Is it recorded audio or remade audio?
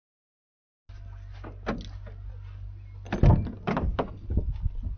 recorded